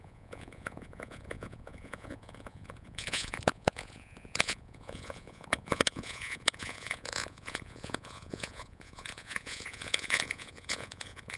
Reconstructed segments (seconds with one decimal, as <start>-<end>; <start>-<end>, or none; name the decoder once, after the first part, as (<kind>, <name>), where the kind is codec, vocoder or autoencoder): 0.0-11.4 (vocoder, Vocos)